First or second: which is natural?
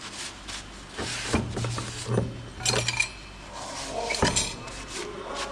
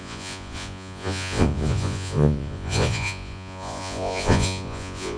first